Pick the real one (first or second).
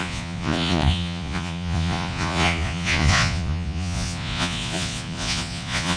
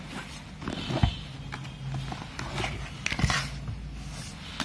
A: second